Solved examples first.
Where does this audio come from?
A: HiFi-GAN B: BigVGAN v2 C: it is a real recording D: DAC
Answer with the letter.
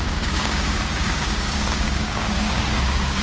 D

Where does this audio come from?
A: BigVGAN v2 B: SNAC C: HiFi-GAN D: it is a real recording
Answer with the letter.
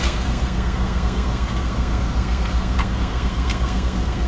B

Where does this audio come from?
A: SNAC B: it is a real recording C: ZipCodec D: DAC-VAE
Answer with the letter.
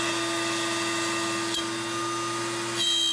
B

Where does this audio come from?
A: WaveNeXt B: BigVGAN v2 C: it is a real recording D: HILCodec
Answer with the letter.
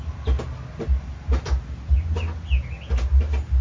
C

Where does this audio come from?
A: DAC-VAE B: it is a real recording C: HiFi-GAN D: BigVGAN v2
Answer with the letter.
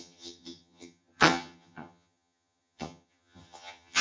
C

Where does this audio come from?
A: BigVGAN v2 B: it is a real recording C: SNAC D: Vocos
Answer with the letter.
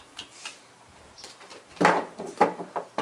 A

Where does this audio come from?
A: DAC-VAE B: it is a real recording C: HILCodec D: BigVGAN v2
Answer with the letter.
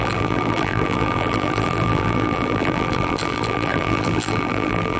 D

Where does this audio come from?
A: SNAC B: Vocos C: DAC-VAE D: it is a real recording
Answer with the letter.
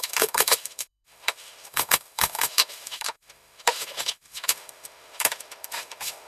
C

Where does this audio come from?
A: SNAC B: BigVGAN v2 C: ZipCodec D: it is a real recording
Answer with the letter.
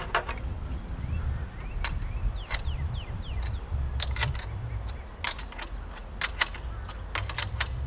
D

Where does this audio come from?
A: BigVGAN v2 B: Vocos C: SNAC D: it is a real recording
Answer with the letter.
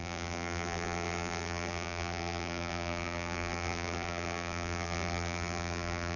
A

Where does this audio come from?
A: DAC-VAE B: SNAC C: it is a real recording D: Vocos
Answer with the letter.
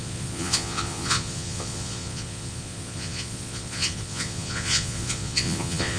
D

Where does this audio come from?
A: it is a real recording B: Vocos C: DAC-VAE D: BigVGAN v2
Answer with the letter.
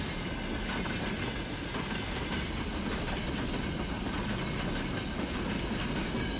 A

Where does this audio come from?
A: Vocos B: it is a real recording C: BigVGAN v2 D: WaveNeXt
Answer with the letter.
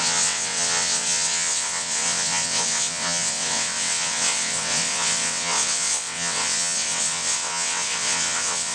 D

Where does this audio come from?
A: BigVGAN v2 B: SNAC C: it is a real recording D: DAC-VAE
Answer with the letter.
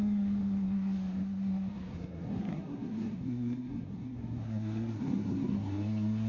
B